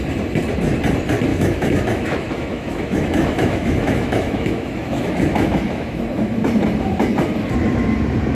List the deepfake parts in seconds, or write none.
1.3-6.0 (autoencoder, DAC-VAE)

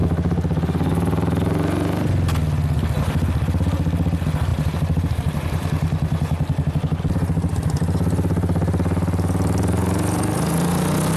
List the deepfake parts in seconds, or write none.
4.5-7.0 (vocoder, BigVGAN v2)

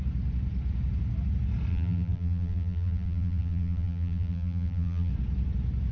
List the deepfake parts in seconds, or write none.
1.7-5.1 (vocoder, BigVGAN v2)

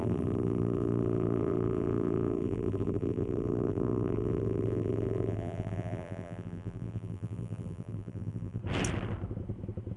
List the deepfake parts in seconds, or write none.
0.0-8.6 (vocoder, BigVGAN v2)

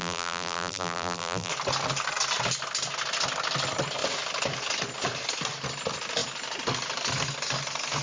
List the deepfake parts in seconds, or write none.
0.0-1.5 (vocoder, BigVGAN v2)